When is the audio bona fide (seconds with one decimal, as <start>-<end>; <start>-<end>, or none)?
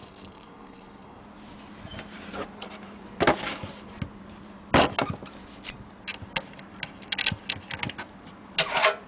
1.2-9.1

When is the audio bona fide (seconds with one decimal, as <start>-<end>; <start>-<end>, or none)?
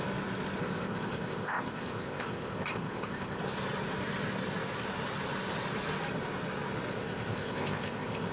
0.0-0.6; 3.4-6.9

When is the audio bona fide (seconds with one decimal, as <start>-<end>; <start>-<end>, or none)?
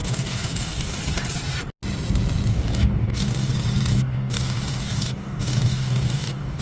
1.0-2.5; 3.5-3.9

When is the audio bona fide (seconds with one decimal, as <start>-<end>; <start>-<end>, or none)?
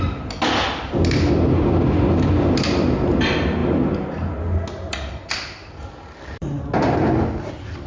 0.0-7.9